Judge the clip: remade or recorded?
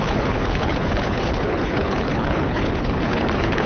remade